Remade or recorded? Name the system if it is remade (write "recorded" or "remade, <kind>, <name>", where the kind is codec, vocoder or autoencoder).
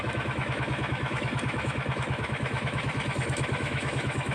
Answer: remade, autoencoder, DAC-VAE